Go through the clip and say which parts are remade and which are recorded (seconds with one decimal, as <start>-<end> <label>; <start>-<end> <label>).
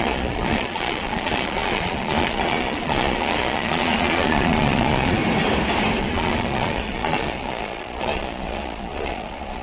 0.0-5.2 remade; 5.2-6.0 recorded; 6.0-9.6 remade